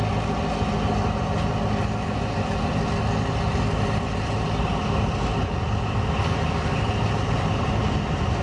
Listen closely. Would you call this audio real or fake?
real